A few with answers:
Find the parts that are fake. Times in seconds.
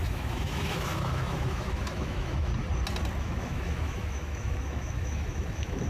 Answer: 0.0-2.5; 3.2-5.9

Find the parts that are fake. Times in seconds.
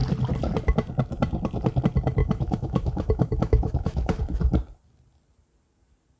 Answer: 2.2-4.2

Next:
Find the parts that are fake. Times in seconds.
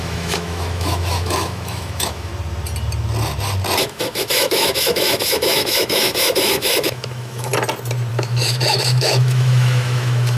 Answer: 0.0-2.3; 3.8-7.5; 8.1-10.4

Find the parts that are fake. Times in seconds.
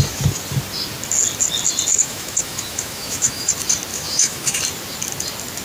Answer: 1.9-3.5; 3.9-4.6